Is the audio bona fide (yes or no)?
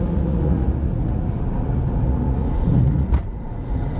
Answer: no